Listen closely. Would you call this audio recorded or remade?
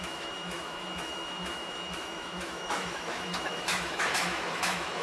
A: remade